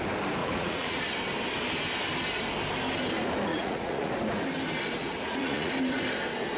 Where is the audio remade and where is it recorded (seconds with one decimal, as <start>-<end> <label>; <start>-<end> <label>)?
0.0-0.4 recorded; 0.4-1.0 remade; 1.0-3.5 recorded; 3.5-4.1 remade; 4.1-5.0 recorded; 5.0-5.7 remade; 5.7-6.6 recorded